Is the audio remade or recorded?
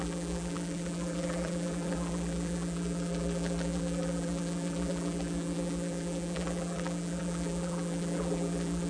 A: remade